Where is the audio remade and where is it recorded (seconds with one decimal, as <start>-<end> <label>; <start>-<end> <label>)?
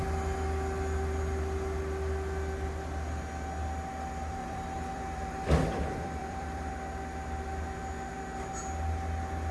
0.0-4.4 recorded; 4.4-6.7 remade; 6.7-9.5 recorded